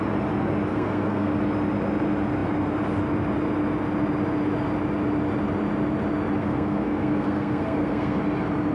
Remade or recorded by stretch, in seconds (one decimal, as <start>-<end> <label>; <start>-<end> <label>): 0.0-0.7 recorded; 0.7-1.4 remade; 1.4-6.4 recorded; 6.4-8.2 remade; 8.2-8.7 recorded